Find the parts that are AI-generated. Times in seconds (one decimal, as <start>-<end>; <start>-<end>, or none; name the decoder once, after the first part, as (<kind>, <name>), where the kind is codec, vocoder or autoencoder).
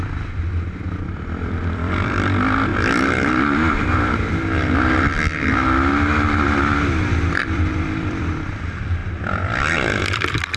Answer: 0.0-2.7 (vocoder, BigVGAN v2); 7.4-10.6